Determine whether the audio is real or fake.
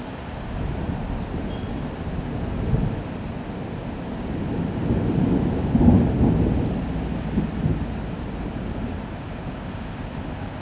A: real